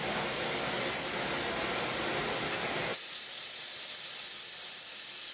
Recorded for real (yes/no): yes